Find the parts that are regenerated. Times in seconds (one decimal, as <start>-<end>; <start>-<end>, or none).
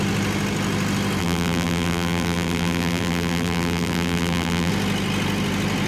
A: 1.2-4.7